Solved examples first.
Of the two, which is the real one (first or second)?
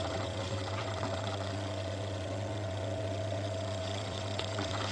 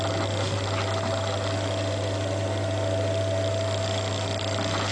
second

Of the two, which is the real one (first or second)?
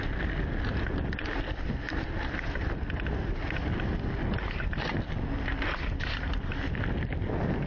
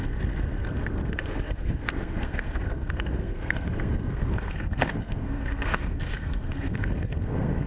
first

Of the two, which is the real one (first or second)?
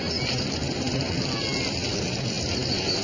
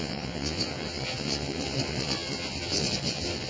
first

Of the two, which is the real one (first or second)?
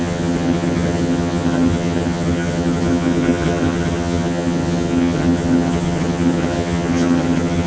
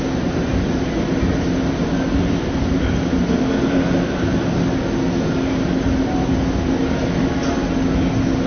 second